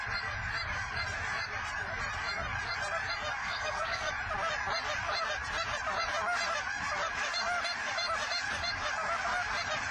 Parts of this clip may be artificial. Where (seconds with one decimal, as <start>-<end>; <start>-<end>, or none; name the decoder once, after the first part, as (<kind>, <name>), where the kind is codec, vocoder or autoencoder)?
3.4-4.1 (codec, SNAC)